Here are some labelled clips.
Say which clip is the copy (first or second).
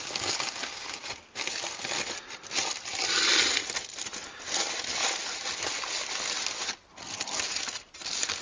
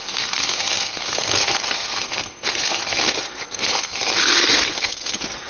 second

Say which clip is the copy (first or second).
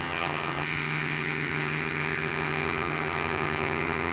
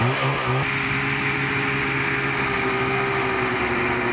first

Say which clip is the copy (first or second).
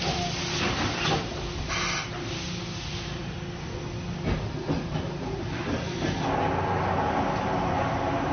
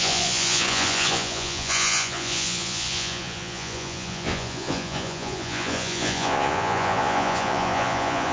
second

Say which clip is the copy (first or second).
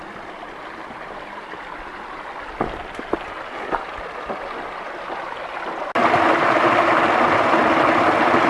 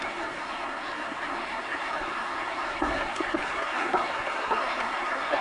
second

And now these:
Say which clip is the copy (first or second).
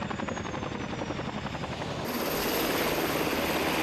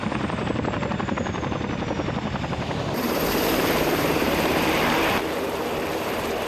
second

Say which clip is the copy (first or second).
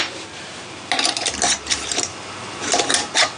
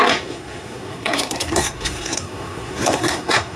second